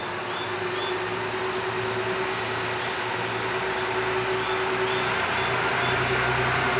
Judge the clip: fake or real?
real